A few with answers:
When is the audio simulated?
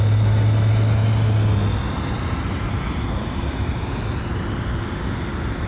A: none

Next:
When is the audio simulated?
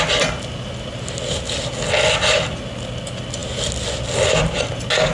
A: none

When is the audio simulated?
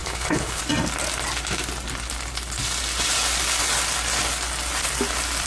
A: 0.0-0.6 (codec, HILCodec)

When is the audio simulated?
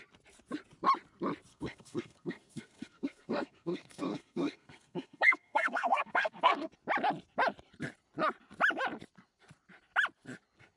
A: 1.5-6.7 (codec, SNAC)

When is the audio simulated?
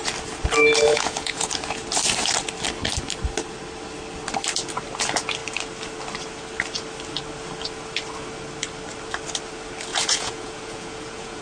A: 0.9-1.5 (vocoder, Vocos); 9.9-11.4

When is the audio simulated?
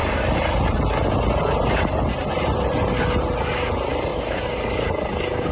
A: none